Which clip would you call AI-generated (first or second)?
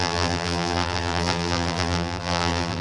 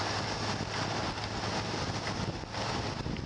first